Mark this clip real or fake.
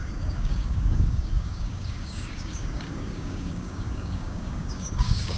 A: fake